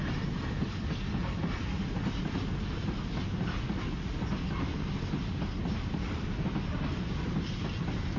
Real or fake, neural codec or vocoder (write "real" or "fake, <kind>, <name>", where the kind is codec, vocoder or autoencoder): real